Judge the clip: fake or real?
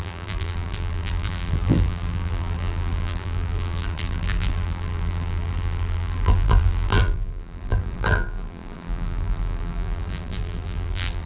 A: fake